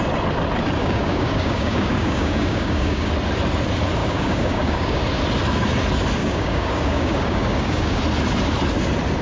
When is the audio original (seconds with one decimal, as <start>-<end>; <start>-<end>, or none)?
0.0-0.8; 3.1-4.0; 5.0-6.2; 8.0-9.2